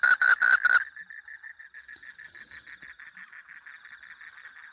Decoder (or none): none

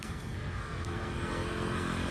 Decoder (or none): codec, SNAC